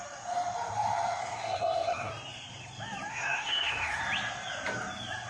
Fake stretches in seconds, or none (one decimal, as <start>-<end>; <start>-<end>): 1.2-2.1; 3.1-4.0